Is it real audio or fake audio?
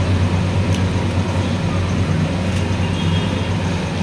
real